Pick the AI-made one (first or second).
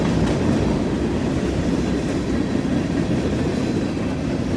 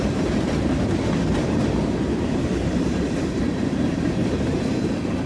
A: second